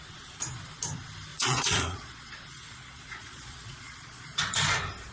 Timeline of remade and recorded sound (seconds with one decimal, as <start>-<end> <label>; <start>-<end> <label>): 0.0-1.3 recorded; 1.3-4.4 remade; 4.4-5.1 recorded